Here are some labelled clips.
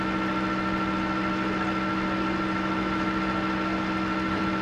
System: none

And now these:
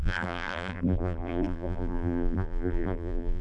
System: vocoder, BigVGAN v2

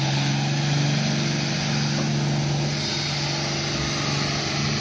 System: none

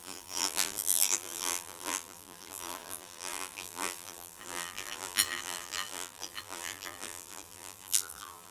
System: vocoder, BigVGAN v2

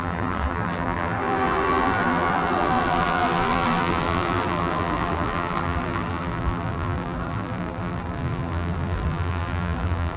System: vocoder, BigVGAN v2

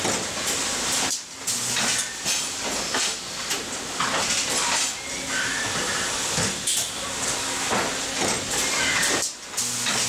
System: none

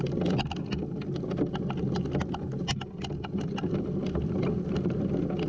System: none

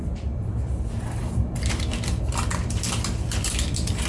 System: vocoder, BigVGAN v2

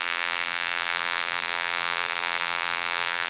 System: vocoder, BigVGAN v2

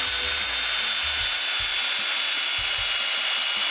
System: none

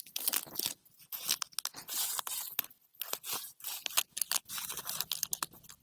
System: none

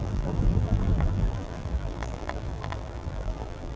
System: vocoder, BigVGAN v2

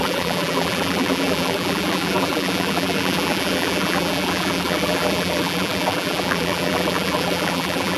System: vocoder, BigVGAN v2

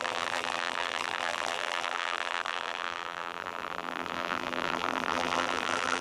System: vocoder, BigVGAN v2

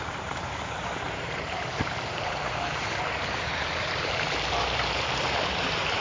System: vocoder, BigVGAN v2